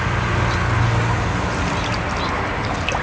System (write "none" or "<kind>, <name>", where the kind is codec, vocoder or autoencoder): none